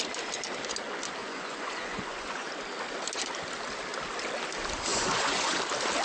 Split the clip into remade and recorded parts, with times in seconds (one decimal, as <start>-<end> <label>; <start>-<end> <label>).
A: 0.0-1.2 recorded; 1.2-2.5 remade; 2.5-4.9 recorded; 4.9-5.6 remade; 5.6-6.0 recorded